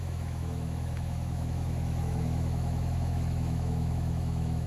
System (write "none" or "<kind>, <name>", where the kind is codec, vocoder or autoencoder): autoencoder, DAC-VAE